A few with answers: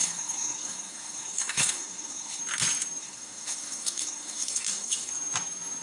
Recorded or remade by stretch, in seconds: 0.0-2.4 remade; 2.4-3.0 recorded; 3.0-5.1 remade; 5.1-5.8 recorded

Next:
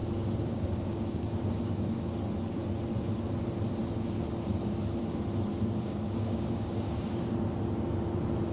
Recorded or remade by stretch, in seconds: 0.0-1.5 remade; 1.5-5.5 recorded; 5.5-7.1 remade; 7.1-8.5 recorded

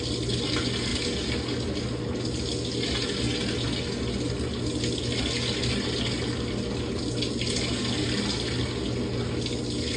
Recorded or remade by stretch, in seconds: 0.0-10.0 recorded

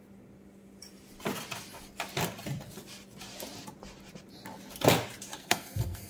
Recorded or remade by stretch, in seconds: 0.0-5.3 recorded; 5.3-6.1 remade